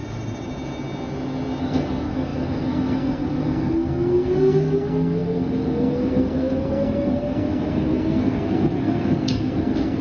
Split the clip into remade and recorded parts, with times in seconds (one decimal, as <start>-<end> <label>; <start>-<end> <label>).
0.0-1.6 recorded; 1.6-10.0 remade